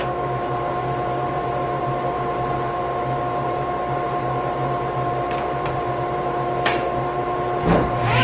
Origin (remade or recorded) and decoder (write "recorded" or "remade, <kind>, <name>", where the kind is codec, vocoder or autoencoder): remade, vocoder, BigVGAN v2